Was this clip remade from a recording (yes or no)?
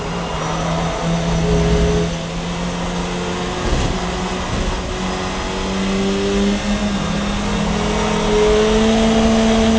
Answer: no